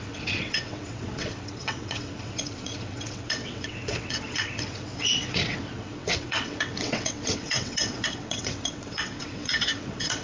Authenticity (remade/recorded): remade